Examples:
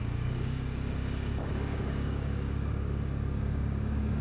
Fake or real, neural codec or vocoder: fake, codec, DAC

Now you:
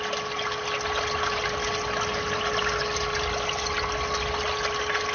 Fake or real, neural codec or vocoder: real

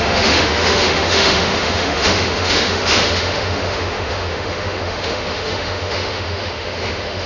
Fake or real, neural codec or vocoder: fake, autoencoder, DAC-VAE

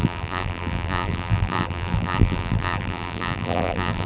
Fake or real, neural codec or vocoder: fake, vocoder, BigVGAN v2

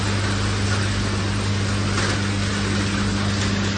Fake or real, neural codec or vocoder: real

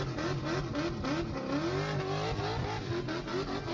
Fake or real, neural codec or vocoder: real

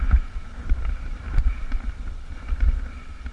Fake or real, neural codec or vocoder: fake, vocoder, BigVGAN v2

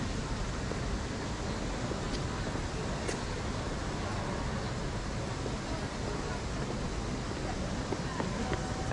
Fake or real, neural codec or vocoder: real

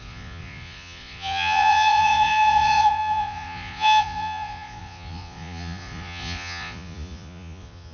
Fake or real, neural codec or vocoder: fake, vocoder, Vocos